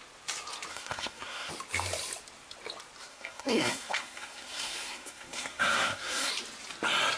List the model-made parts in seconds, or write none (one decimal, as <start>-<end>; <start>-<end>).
0.7-1.5; 3.1-6.3